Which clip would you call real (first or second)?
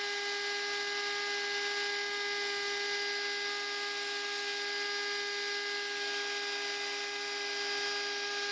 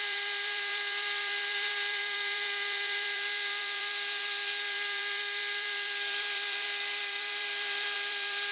first